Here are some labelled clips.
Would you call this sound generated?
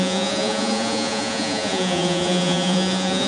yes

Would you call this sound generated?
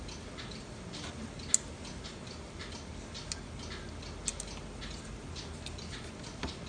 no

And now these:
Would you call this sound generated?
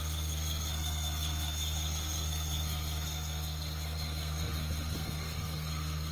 yes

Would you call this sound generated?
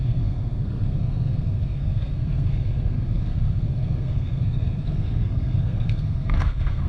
yes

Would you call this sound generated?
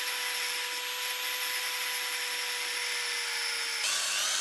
no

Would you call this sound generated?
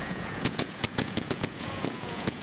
yes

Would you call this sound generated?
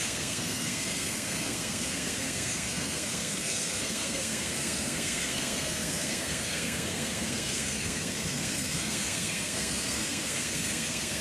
yes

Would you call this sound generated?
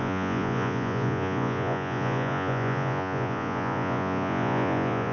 yes